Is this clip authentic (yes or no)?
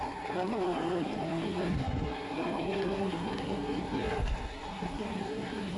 no